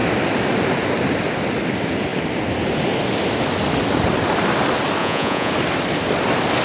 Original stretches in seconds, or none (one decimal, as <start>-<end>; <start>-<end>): 0.0-5.0; 5.5-6.6